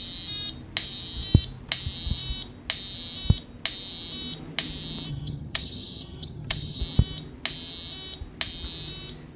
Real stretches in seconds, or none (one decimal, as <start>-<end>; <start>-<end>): 0.0-5.1; 6.8-9.4

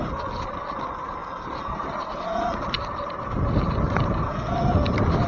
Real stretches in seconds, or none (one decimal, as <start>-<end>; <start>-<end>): 0.0-5.3